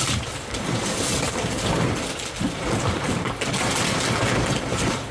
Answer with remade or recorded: remade